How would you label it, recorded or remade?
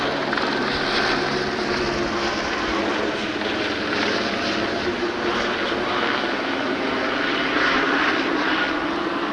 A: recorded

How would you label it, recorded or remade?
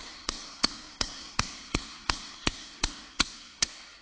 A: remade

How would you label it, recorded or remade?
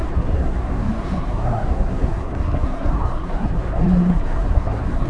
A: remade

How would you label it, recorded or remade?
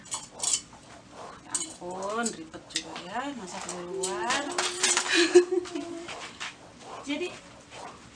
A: recorded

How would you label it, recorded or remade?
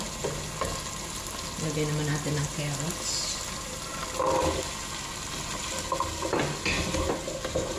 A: recorded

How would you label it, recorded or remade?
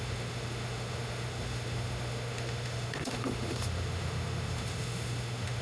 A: remade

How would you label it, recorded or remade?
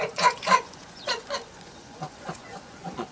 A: remade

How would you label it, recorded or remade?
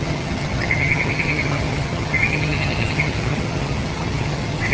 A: remade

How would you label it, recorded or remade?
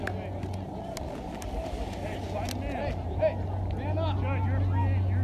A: recorded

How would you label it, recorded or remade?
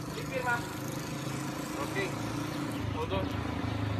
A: recorded